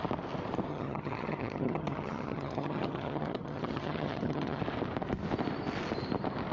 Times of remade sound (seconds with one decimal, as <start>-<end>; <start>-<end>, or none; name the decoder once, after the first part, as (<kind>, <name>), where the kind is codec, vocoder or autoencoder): 0.7-4.6 (vocoder, HiFi-GAN)